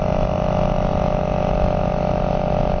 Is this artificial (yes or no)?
no